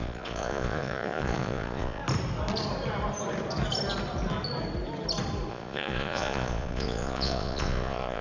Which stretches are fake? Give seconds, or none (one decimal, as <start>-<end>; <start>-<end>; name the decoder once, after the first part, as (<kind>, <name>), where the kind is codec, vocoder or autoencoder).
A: 0.0-2.0 (vocoder, Vocos); 5.5-8.2